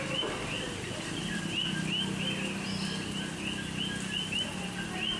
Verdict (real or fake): real